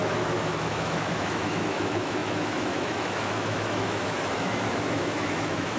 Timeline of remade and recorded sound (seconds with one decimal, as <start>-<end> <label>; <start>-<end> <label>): 0.0-5.8 remade